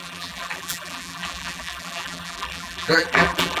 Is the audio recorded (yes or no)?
no